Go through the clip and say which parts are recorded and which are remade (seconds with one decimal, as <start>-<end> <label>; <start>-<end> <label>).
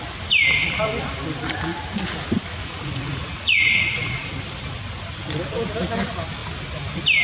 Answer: 0.0-2.6 recorded; 2.6-4.3 remade; 4.3-7.2 recorded